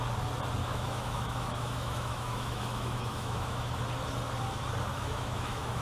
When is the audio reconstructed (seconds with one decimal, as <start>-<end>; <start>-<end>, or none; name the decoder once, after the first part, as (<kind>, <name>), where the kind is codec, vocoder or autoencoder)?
0.6-3.8 (autoencoder, DAC-VAE); 4.9-5.8